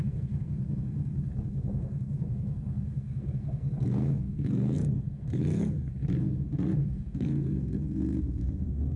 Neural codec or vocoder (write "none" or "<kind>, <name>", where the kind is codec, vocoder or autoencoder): codec, SNAC